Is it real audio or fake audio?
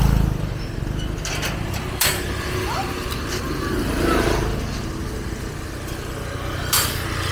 real